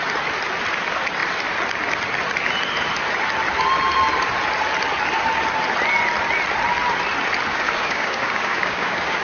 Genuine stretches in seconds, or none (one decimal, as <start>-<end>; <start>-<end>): 0.0-7.5